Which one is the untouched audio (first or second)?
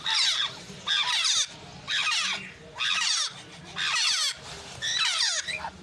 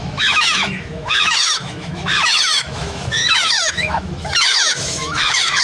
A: first